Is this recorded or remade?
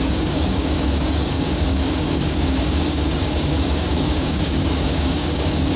remade